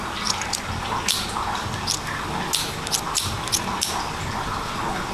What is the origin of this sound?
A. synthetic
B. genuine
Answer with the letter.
B